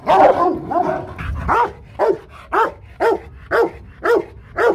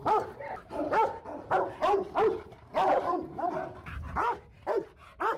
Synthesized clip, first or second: second